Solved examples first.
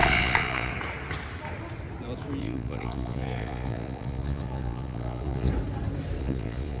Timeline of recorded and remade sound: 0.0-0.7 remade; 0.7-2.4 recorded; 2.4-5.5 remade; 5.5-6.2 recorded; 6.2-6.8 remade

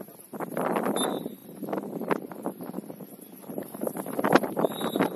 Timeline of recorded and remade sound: 0.0-5.2 recorded

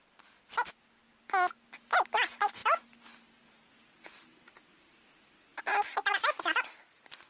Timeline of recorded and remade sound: 0.0-7.3 recorded

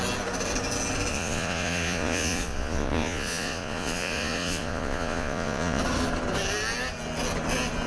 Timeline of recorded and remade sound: 0.0-1.1 recorded; 1.1-5.8 remade; 5.8-7.9 recorded